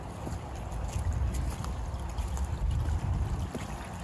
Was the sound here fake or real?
real